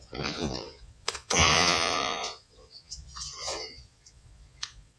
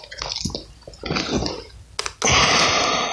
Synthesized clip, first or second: first